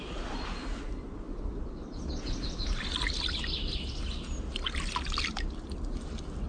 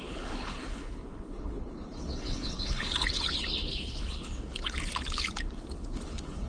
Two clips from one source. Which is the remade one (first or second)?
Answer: second